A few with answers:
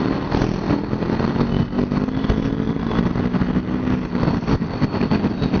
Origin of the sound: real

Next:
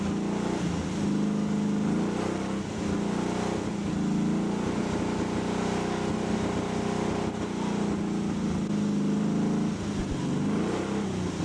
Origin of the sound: real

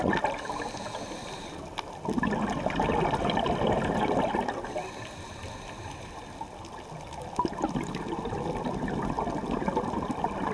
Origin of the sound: real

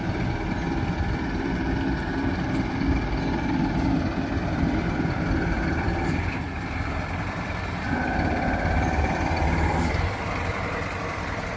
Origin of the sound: fake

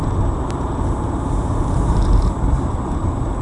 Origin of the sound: fake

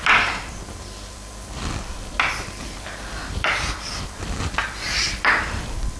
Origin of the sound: fake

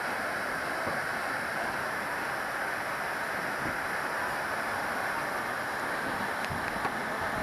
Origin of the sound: real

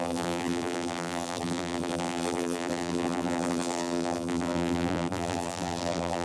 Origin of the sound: fake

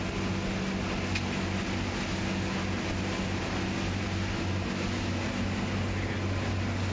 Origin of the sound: real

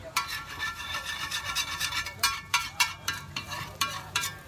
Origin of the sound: fake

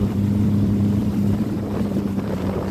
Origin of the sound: fake